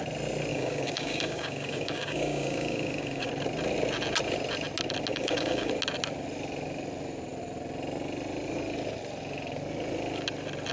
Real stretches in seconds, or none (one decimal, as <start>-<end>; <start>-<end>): 0.0-0.5; 3.3-5.1; 5.7-10.7